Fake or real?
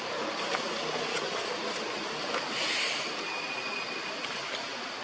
real